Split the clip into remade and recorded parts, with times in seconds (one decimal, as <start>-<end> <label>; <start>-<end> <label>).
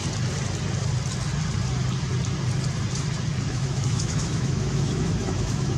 0.0-3.5 recorded; 3.5-5.8 remade